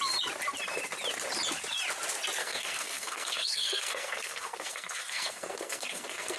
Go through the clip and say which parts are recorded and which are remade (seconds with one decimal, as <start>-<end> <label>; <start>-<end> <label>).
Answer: 0.0-2.4 recorded; 2.4-6.4 remade